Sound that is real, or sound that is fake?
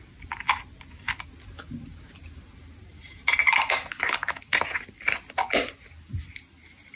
real